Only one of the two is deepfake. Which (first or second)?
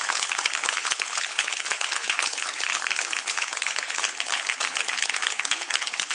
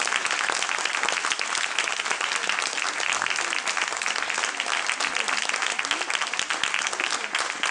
first